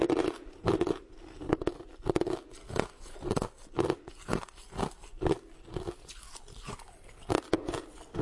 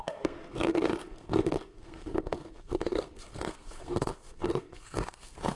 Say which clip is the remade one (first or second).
second